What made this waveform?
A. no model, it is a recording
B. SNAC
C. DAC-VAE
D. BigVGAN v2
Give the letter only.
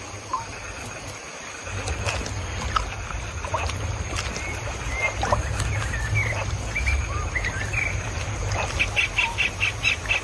A